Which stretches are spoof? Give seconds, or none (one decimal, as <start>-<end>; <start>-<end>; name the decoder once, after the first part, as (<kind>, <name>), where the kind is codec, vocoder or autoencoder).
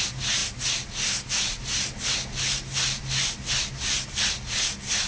none